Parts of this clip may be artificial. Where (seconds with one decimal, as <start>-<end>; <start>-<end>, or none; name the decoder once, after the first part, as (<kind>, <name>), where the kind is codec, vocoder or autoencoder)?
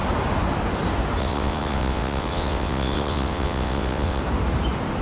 1.2-4.2 (vocoder, WaveNeXt)